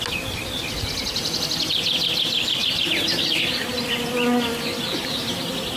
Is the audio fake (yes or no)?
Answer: no